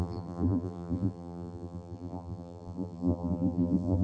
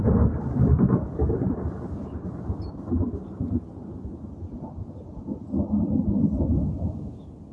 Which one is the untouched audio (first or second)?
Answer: second